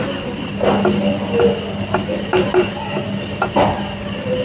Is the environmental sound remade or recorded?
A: recorded